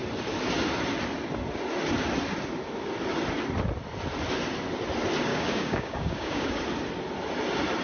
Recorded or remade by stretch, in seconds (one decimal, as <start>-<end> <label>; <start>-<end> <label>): 0.0-5.3 recorded; 5.3-6.6 remade; 6.6-7.8 recorded